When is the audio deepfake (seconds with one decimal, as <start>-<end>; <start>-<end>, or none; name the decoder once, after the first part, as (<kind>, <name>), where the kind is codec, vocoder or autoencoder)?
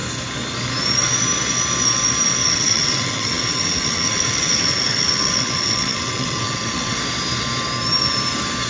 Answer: 2.4-7.0 (vocoder, WaveNeXt)